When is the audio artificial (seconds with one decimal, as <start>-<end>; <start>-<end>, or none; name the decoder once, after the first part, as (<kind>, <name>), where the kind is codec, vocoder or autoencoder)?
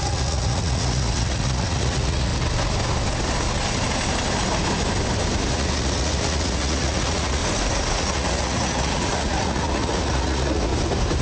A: 0.0-2.3 (vocoder, Vocos); 5.5-7.4; 7.9-10.7